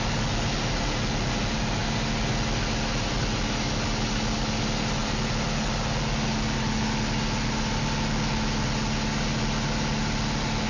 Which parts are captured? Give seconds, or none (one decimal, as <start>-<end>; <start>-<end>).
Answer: 0.0-10.7